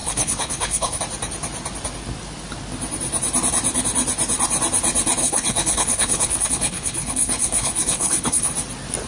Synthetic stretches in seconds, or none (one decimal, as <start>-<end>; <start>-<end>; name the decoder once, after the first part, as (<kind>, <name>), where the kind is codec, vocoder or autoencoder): 0.0-1.0 (codec, HILCodec); 5.2-8.5